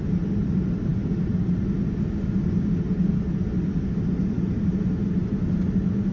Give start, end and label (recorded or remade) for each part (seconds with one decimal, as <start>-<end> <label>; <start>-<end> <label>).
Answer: 0.0-6.1 recorded